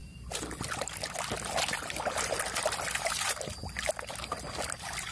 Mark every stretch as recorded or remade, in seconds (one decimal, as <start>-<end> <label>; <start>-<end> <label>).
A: 0.0-5.1 recorded